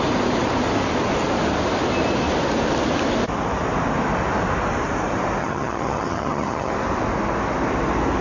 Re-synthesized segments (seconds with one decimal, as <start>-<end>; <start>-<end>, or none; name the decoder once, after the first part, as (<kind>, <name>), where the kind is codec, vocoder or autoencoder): 5.4-6.7 (vocoder, HiFi-GAN)